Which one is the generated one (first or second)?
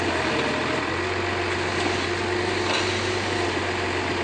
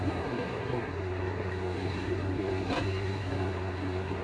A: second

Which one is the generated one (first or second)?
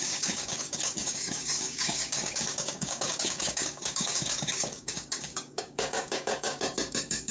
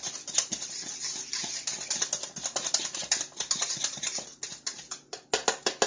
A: first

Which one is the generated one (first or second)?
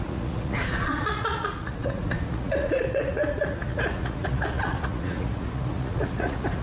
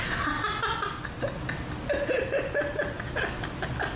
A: first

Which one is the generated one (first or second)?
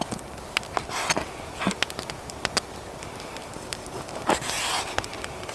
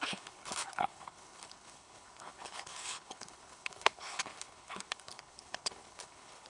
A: second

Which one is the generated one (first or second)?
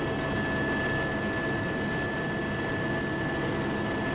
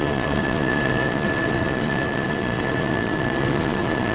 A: second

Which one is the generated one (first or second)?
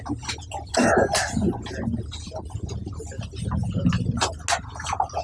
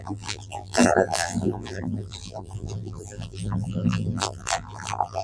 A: second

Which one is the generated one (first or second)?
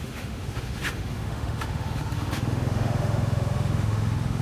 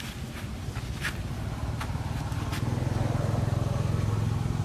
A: first